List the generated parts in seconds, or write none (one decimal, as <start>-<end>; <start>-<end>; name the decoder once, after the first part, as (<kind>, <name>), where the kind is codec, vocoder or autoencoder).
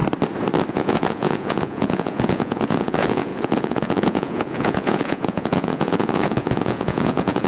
0.7-7.5 (vocoder, Vocos)